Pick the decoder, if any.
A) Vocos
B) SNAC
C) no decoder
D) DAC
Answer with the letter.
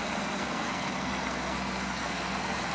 B